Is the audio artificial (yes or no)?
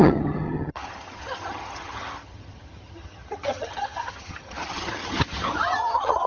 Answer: yes